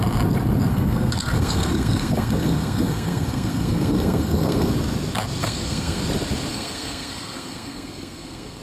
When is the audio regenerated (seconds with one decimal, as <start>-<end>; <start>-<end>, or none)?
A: 0.7-4.7; 5.4-6.0; 6.5-8.6